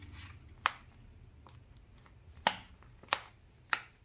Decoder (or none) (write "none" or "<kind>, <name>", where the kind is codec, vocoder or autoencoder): none